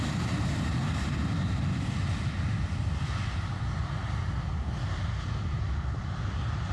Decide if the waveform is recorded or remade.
recorded